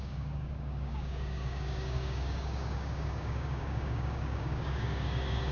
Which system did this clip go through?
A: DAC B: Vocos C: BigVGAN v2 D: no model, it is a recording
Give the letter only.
A